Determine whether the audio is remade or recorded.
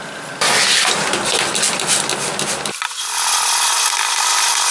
recorded